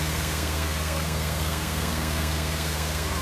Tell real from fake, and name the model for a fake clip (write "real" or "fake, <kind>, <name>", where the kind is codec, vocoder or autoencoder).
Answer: fake, codec, SNAC